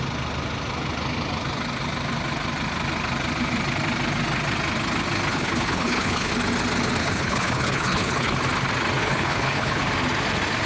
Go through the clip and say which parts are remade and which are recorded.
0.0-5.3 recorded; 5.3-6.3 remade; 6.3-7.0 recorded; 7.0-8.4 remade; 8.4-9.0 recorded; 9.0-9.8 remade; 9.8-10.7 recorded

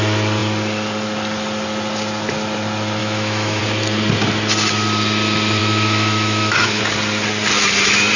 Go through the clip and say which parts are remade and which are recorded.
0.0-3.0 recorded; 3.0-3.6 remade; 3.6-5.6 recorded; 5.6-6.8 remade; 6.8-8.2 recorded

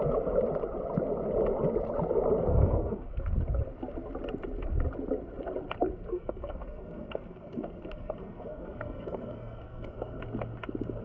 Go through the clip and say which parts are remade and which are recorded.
0.0-2.5 recorded; 2.5-3.2 remade; 3.2-6.1 recorded; 6.1-10.2 remade; 10.2-11.0 recorded